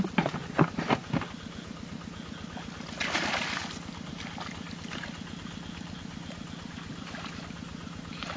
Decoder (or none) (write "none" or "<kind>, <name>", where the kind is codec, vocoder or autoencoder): none